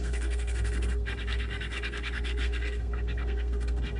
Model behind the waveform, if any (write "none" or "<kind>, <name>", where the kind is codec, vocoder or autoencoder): codec, SNAC